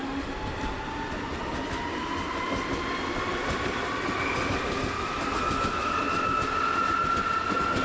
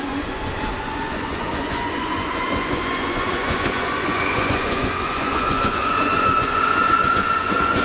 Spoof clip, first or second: second